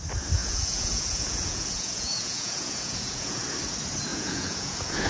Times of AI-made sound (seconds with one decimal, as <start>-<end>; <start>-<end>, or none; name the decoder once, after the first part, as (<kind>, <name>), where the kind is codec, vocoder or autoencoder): 0.4-3.4 (vocoder, Vocos); 4.1-5.1